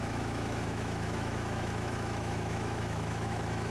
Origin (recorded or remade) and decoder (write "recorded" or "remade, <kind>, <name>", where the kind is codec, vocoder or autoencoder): remade, autoencoder, DAC-VAE